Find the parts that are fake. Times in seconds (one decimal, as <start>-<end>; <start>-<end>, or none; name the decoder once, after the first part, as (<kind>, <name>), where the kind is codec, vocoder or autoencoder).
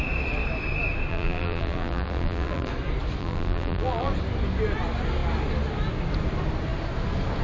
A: 1.1-2.7 (vocoder, BigVGAN v2); 3.2-4.1